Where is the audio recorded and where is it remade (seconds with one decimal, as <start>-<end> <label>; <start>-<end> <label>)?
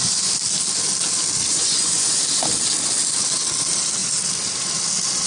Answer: 0.0-1.5 recorded; 1.5-2.2 remade; 2.2-5.3 recorded